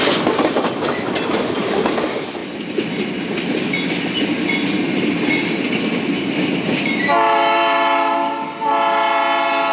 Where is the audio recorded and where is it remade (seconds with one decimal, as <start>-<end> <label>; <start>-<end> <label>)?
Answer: 0.0-9.7 recorded